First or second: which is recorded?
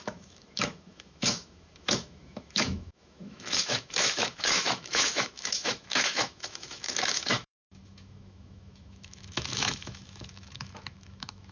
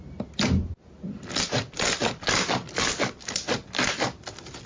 second